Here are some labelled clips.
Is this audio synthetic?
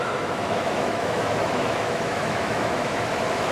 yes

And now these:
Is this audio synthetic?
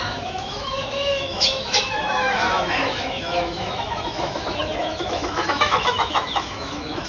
yes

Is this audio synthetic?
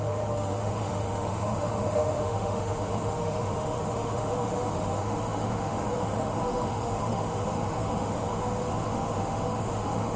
yes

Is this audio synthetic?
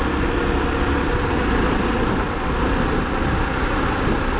no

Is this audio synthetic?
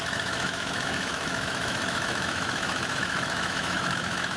yes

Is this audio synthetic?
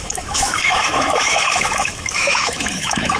yes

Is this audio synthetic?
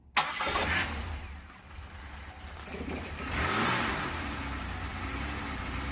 no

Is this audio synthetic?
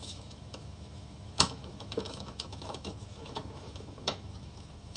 yes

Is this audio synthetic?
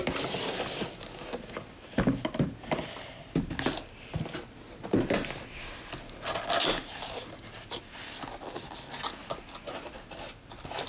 no